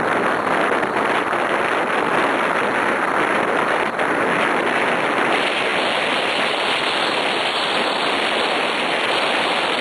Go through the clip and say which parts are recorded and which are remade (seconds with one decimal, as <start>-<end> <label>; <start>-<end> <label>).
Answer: 0.0-9.8 recorded